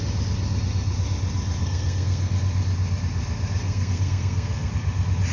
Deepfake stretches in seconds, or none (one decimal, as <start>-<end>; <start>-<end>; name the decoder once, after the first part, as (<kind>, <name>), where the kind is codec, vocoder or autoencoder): 1.6-2.3 (codec, SNAC); 3.6-4.7